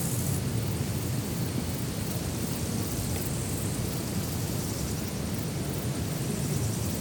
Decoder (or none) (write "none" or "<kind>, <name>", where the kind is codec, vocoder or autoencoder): none